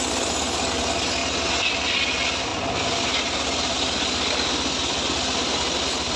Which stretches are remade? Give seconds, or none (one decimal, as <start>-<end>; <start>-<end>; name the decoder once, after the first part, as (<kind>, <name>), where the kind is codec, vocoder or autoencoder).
none